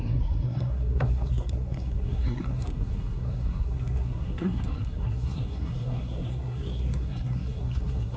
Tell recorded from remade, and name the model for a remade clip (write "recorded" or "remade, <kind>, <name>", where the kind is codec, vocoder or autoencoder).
remade, codec, SNAC